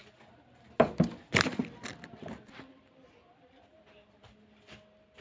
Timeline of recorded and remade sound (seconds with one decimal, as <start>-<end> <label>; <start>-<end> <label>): 0.0-5.2 recorded